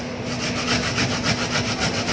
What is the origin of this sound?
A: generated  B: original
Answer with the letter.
B